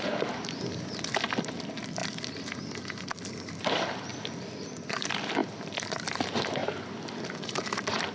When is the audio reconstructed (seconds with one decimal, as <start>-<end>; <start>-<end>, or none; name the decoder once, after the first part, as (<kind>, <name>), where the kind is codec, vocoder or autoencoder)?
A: 0.0-2.0 (vocoder, BigVGAN v2); 3.3-5.4; 6.0-8.1